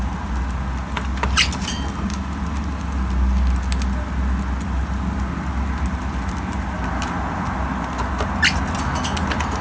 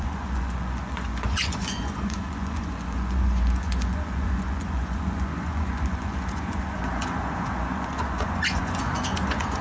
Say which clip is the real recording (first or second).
first